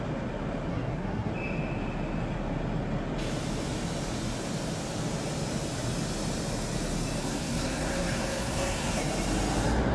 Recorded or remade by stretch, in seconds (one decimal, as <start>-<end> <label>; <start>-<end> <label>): 0.0-0.7 recorded; 0.7-1.3 remade; 1.3-7.2 recorded; 7.2-9.0 remade; 9.0-9.9 recorded